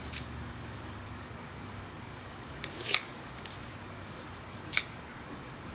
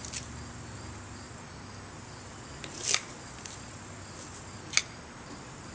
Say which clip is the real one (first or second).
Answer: second